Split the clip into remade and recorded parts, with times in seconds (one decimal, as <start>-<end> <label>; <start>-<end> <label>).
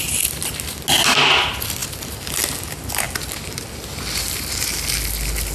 0.0-5.5 recorded